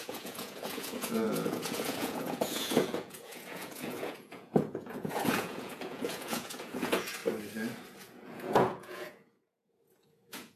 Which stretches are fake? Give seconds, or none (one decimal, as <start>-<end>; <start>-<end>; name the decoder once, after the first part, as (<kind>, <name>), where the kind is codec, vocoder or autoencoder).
0.0-7.2 (vocoder, Vocos); 8.0-10.6

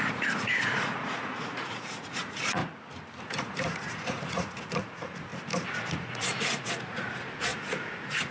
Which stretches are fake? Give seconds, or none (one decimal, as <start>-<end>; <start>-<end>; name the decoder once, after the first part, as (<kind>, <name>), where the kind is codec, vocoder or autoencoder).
0.0-2.6 (vocoder, Vocos); 3.2-5.3; 5.9-8.3

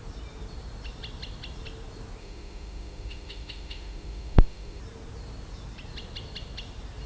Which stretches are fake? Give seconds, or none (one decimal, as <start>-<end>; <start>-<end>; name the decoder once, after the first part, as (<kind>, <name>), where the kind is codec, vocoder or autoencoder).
2.2-4.8 (autoencoder, DAC-VAE)

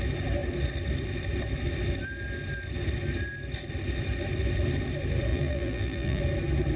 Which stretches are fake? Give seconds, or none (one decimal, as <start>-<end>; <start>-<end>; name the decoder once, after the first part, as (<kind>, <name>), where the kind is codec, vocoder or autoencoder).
5.3-6.2 (vocoder, BigVGAN v2)